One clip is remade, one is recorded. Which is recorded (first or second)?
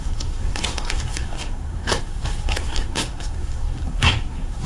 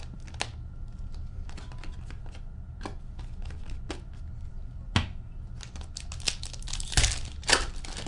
second